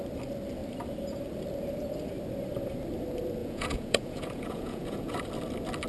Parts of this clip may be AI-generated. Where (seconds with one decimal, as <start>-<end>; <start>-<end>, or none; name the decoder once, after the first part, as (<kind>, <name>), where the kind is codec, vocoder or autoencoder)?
3.4-5.3 (vocoder, Vocos)